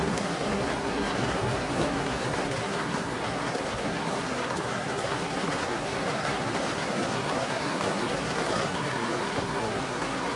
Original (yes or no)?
no